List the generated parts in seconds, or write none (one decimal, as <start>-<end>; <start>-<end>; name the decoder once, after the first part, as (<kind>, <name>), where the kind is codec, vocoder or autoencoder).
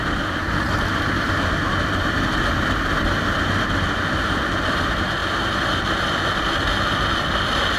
none